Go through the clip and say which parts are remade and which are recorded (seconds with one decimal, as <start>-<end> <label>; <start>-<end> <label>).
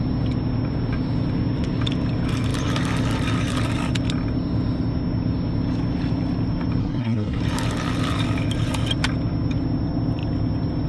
0.0-6.8 recorded; 6.8-7.4 remade; 7.4-10.9 recorded